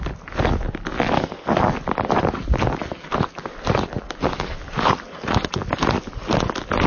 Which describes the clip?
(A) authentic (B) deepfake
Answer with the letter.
A